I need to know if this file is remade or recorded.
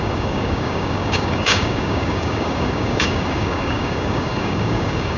remade